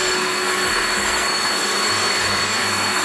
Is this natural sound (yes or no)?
no